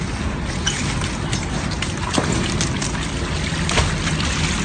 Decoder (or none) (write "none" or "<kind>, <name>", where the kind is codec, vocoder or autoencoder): none